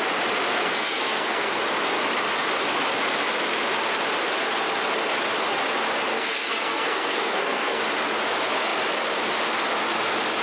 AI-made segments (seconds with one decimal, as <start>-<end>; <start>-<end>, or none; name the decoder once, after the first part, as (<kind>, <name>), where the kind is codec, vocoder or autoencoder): 0.5-1.6 (codec, SNAC); 6.1-7.8